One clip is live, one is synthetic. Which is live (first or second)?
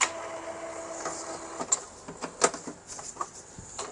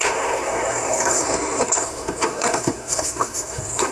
first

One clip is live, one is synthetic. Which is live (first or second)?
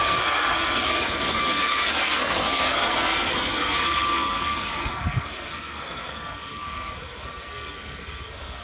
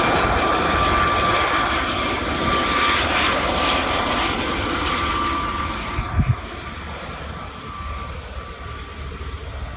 second